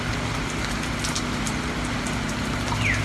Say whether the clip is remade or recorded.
recorded